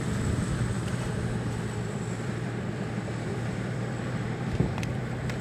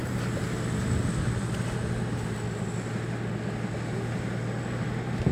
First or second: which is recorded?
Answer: second